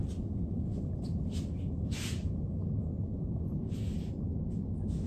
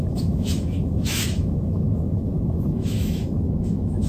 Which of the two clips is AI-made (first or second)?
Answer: second